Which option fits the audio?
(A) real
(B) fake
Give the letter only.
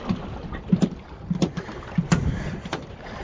A